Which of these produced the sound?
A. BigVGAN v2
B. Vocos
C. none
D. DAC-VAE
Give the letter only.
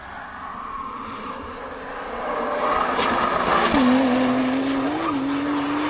C